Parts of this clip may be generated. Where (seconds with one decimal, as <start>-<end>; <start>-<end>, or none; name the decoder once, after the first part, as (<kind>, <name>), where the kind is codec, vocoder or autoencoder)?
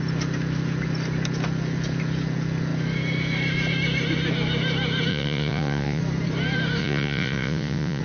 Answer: 5.1-6.0 (vocoder, Vocos); 6.8-8.0